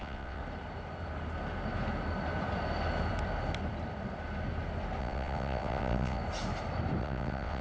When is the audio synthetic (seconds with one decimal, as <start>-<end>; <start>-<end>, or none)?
0.0-0.4; 5.0-6.2; 7.0-7.6